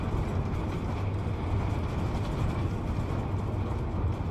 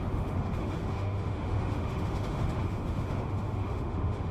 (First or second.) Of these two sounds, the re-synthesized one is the second